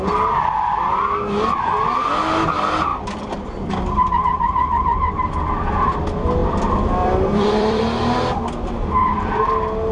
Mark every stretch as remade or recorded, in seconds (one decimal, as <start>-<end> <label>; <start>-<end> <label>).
0.0-2.9 recorded; 2.9-3.7 remade; 3.7-6.4 recorded; 6.4-7.8 remade; 7.8-9.9 recorded